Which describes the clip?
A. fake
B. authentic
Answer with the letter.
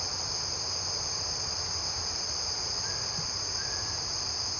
B